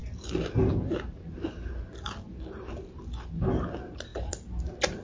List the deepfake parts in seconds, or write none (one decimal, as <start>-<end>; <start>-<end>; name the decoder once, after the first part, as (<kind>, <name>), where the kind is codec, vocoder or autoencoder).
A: none

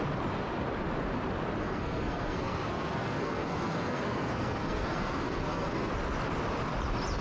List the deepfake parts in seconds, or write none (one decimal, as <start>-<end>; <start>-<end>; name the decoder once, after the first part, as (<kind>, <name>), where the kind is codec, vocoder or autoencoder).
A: 1.6-5.9 (codec, SNAC)

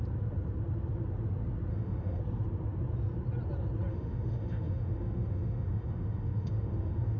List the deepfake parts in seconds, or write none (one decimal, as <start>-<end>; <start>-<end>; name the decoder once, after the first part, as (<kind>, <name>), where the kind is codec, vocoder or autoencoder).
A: 1.7-2.2 (autoencoder, DAC-VAE); 3.9-7.2

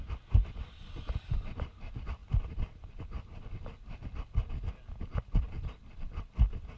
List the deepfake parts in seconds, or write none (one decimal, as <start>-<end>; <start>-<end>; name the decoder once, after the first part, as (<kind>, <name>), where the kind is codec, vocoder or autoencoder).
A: none

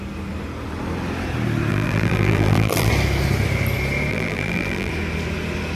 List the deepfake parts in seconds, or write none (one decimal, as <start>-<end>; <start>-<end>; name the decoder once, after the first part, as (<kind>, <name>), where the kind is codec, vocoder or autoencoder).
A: 1.7-2.9 (vocoder, BigVGAN v2); 4.1-4.9

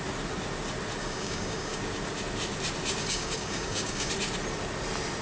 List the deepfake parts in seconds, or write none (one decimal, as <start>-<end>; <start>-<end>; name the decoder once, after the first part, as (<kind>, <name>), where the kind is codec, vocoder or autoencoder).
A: 1.0-1.8 (codec, DAC); 3.0-4.1